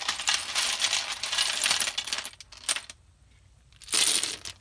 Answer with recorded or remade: recorded